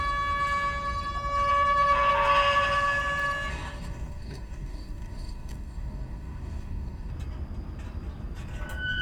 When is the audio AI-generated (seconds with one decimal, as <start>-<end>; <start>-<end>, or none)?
3.5-7.1